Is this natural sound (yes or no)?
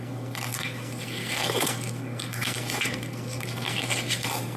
no